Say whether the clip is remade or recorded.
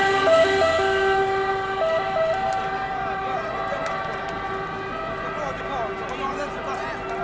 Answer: recorded